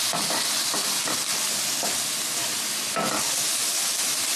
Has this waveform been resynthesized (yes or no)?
no